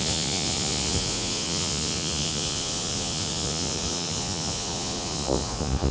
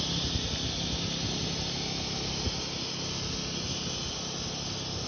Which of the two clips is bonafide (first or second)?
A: second